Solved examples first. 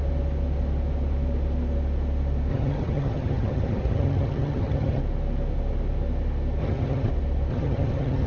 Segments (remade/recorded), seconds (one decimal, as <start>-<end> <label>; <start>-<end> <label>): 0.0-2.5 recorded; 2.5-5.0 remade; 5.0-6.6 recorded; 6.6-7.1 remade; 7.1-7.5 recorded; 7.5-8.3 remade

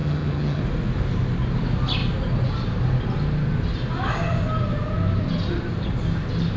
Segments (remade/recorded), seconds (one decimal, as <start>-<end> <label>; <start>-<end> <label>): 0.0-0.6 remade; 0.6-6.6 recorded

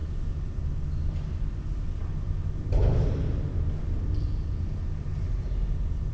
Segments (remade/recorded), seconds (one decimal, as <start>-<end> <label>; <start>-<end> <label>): 0.0-6.1 recorded